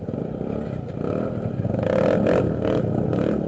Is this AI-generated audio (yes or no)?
no